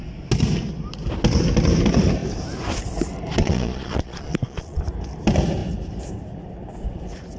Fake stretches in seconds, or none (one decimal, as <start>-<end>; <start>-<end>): 3.4-4.8